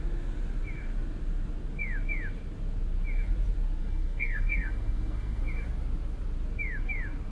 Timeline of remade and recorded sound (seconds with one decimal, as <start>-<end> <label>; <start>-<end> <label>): 0.0-3.8 recorded; 3.8-5.4 remade; 5.4-7.3 recorded